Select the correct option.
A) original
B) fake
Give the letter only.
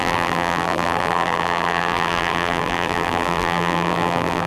B